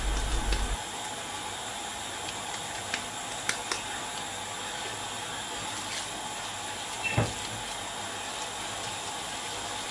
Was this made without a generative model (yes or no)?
yes